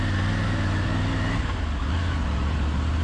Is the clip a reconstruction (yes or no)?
no